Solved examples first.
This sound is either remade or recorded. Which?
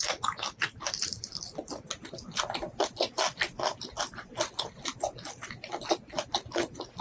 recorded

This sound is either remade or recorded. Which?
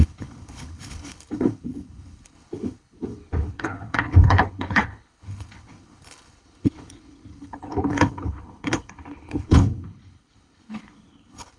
remade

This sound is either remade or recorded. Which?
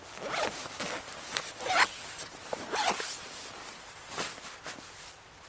recorded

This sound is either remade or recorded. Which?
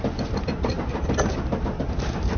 recorded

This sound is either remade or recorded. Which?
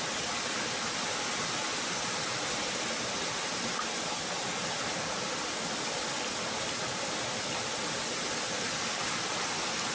recorded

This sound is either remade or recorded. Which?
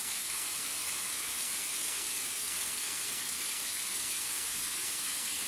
remade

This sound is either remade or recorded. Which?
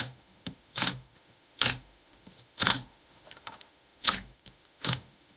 remade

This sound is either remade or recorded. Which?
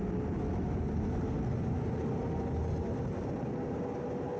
recorded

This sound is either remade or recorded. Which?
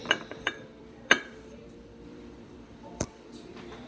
remade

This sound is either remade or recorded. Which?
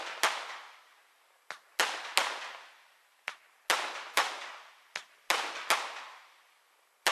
recorded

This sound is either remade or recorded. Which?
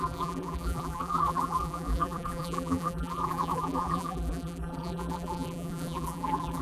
remade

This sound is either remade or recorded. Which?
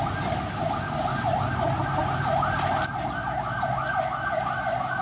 recorded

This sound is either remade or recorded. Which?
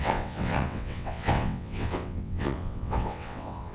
remade